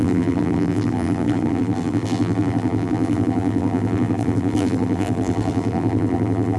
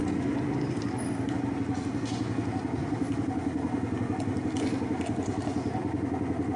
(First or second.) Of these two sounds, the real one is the second